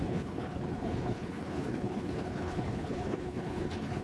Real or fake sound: fake